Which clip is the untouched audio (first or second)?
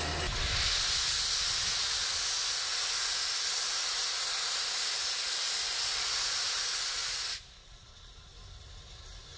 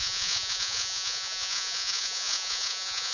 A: first